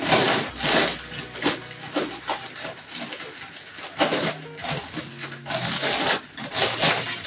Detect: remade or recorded recorded